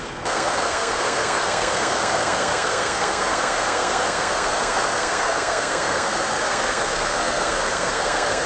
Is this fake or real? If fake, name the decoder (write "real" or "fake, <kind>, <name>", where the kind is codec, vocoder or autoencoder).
fake, codec, SNAC